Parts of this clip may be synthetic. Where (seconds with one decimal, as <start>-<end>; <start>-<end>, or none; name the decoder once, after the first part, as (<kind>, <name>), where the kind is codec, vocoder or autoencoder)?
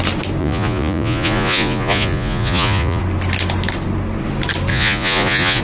0.4-3.0 (vocoder, Vocos); 4.7-5.6